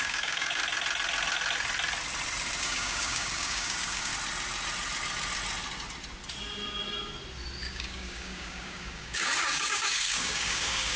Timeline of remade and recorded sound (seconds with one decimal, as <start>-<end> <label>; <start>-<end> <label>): 0.0-0.6 remade; 0.6-2.6 recorded; 2.6-4.1 remade; 4.1-7.6 recorded; 7.6-11.0 remade